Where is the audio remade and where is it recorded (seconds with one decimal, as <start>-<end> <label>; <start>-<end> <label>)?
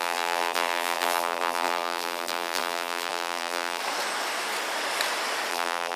0.0-3.8 remade; 3.8-5.5 recorded; 5.5-6.0 remade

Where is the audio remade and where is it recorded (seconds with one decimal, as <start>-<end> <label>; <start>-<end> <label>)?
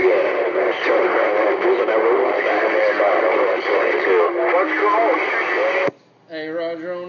0.0-1.2 remade; 1.2-7.1 recorded